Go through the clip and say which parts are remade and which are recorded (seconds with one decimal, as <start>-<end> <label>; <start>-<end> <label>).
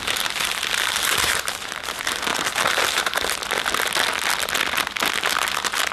0.0-5.9 recorded